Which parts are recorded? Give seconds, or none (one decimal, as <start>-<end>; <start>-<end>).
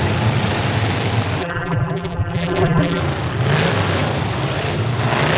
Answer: 0.0-1.4; 3.0-5.4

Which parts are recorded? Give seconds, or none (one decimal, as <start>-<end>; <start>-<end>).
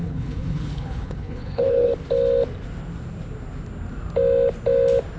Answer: 1.9-5.2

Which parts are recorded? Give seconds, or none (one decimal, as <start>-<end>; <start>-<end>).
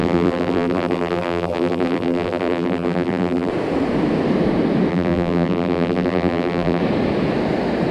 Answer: 3.5-4.9; 6.8-7.9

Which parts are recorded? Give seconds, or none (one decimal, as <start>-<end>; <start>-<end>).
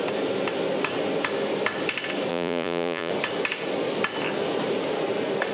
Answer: 0.0-2.3; 3.1-5.5